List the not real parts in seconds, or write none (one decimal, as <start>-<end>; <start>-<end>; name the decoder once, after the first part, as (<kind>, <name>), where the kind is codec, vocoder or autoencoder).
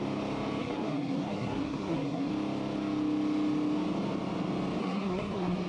0.6-2.3 (codec, SNAC); 4.8-5.7